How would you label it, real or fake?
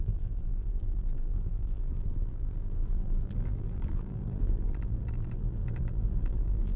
fake